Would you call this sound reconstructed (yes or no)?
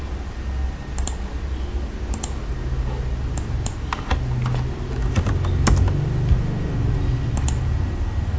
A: no